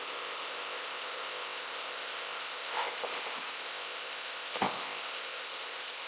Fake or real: fake